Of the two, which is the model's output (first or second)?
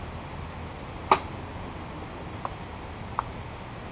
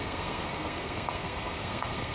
second